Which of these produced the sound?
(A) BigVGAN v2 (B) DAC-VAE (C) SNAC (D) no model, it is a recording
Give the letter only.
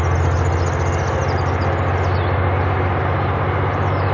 D